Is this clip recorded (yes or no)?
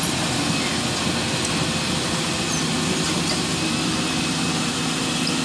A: yes